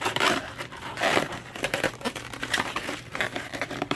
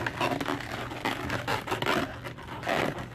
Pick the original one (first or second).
second